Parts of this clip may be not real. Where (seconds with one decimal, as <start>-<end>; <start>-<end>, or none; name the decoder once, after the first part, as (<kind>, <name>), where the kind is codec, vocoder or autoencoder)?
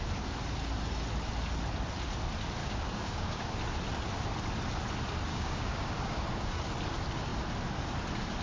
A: 2.6-3.5 (codec, DAC); 5.3-6.6